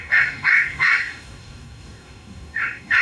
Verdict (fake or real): fake